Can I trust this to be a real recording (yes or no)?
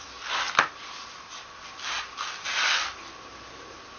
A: yes